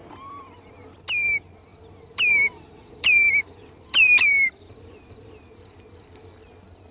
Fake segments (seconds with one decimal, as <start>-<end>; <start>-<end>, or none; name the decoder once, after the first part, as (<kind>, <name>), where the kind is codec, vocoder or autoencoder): 1.7-5.8 (vocoder, BigVGAN v2)